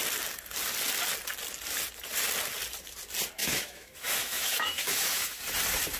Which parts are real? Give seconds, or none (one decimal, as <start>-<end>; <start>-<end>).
0.0-3.4; 5.4-6.0